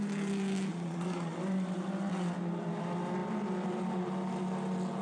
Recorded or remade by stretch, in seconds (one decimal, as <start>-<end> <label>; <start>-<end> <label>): 0.0-0.7 recorded; 0.7-1.3 remade; 1.3-5.0 recorded